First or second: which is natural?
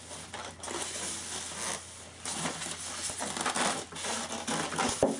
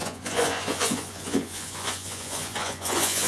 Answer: first